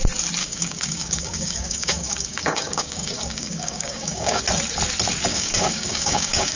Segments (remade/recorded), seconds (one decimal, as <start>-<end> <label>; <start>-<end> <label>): 0.0-0.4 recorded; 0.4-4.4 remade; 4.4-5.3 recorded; 5.3-6.6 remade